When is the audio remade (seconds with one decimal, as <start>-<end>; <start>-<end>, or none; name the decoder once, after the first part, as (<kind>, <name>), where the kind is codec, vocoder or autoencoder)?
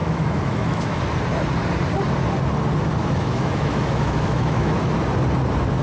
0.0-1.0 (autoencoder, DAC-VAE); 3.0-4.9